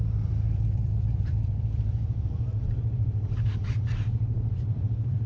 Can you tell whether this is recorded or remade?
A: remade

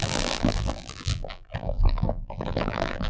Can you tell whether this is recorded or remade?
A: remade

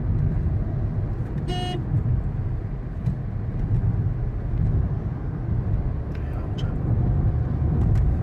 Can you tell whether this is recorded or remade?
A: recorded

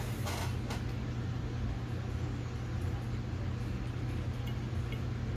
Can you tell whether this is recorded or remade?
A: recorded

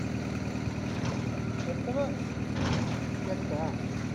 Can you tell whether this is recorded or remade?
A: remade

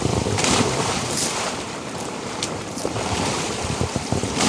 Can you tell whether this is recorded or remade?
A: remade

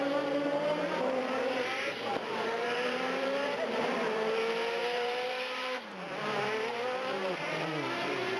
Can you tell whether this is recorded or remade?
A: remade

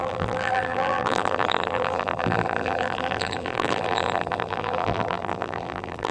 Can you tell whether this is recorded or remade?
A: remade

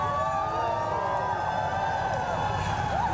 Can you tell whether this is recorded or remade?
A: recorded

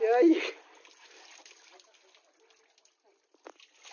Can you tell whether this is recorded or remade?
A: recorded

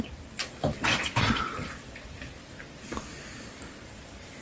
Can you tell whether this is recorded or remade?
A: remade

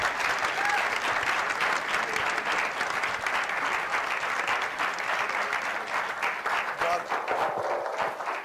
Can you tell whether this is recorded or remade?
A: recorded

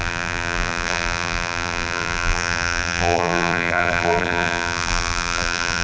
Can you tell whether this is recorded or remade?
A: remade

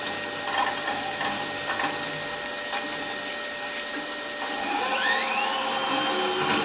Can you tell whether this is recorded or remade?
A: recorded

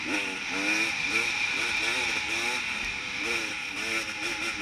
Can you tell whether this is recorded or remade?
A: recorded